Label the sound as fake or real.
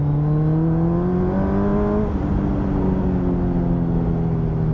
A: real